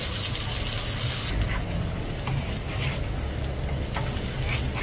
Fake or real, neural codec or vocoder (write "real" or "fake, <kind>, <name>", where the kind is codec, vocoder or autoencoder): real